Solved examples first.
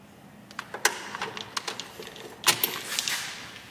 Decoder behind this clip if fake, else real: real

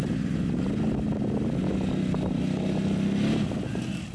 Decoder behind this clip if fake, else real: real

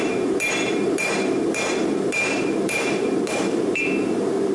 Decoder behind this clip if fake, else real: fake, vocoder, BigVGAN v2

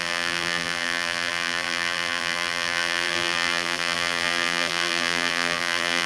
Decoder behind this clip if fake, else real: fake, vocoder, BigVGAN v2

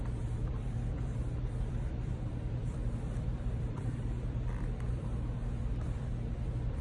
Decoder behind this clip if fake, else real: fake, vocoder, BigVGAN v2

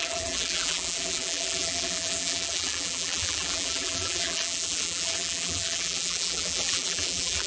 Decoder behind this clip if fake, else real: fake, vocoder, BigVGAN v2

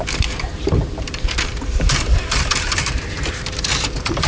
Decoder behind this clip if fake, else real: fake, vocoder, BigVGAN v2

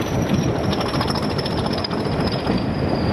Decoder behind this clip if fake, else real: fake, vocoder, BigVGAN v2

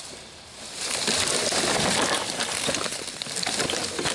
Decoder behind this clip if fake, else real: fake, vocoder, BigVGAN v2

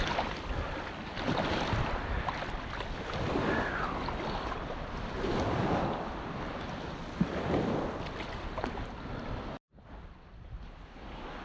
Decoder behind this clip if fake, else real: real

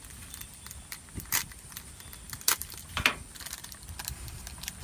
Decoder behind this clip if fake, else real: fake, vocoder, BigVGAN v2